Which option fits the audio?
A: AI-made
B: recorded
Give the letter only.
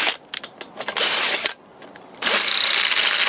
B